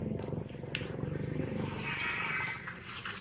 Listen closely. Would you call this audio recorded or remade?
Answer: recorded